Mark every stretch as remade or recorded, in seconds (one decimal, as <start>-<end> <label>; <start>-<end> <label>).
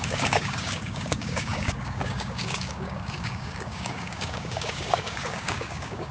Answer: 0.0-6.1 remade